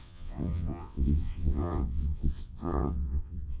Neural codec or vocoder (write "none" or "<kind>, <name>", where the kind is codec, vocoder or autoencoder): vocoder, WaveNeXt